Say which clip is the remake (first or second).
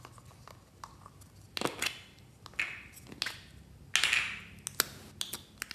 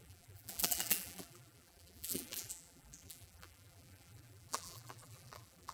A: second